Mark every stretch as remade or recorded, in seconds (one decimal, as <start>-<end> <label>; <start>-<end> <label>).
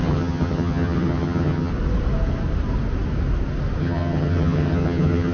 0.0-1.7 remade; 1.7-3.8 recorded; 3.8-5.3 remade